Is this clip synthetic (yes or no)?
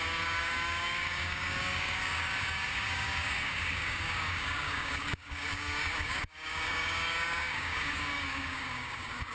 yes